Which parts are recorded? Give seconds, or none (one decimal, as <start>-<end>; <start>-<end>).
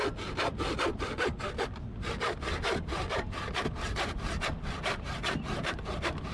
0.0-6.3